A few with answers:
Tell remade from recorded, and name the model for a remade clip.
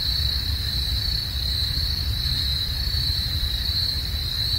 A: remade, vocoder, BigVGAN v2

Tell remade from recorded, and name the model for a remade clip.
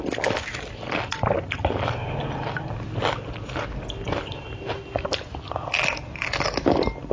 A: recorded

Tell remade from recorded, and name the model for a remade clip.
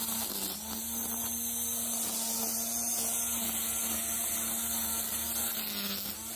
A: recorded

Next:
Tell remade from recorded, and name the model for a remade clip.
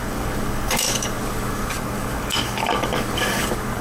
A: remade, codec, DAC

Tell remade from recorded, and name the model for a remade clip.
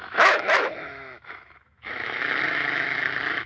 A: remade, autoencoder, DAC-VAE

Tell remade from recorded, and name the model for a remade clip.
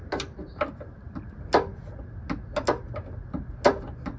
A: recorded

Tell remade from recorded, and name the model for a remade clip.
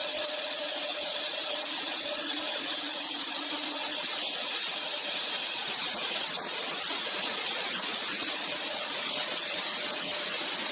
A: remade, vocoder, Vocos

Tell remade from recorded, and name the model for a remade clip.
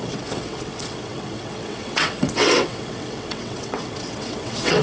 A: remade, vocoder, WaveNeXt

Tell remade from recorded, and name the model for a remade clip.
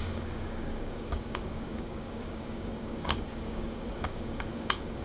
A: remade, codec, DAC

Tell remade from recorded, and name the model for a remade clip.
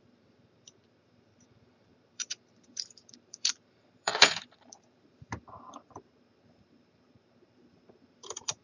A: remade, vocoder, BigVGAN v2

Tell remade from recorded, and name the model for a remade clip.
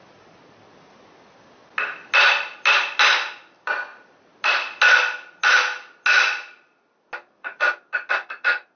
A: recorded